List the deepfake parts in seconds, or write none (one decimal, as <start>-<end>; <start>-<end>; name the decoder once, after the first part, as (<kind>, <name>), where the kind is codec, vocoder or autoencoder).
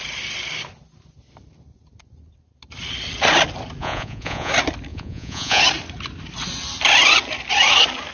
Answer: 3.8-4.5 (vocoder, Vocos); 4.9-5.6